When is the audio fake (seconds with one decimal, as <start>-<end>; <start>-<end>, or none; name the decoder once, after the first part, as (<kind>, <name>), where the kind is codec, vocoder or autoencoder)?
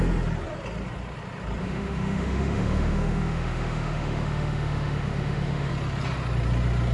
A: 1.6-5.7 (autoencoder, DAC-VAE)